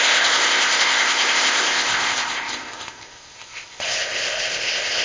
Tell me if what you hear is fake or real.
fake